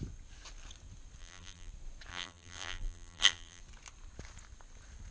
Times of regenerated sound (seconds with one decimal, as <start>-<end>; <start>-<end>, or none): 1.2-1.7; 2.1-3.6